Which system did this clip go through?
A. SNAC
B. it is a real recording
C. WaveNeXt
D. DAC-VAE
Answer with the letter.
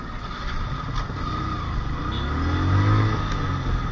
B